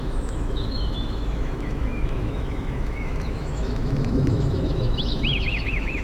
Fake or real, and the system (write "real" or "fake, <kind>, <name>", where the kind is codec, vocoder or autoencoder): fake, autoencoder, DAC-VAE